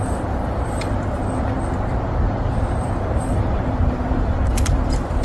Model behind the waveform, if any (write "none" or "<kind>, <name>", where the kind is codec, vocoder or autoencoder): vocoder, BigVGAN v2